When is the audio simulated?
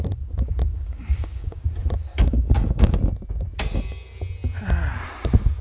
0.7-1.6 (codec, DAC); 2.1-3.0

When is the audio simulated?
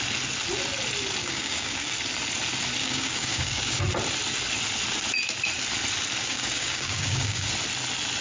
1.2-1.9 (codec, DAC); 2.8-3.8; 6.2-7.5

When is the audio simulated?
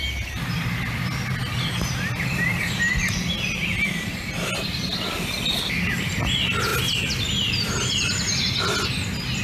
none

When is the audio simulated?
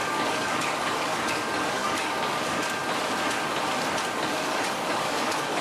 0.0-2.8 (codec, DAC); 4.2-5.6